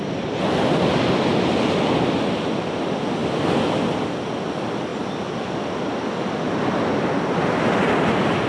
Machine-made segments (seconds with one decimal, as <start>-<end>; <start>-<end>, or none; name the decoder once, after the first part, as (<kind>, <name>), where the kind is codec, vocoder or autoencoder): none